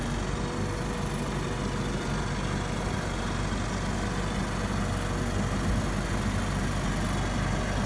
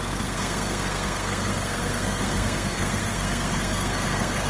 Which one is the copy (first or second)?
second